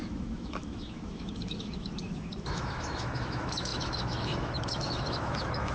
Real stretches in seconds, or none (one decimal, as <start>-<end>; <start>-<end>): none